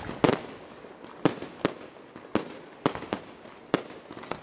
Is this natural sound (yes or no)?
yes